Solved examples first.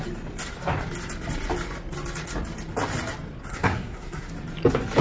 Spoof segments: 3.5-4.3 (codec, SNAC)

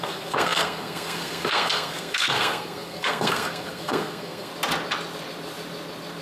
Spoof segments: 0.0-4.5 (codec, SNAC)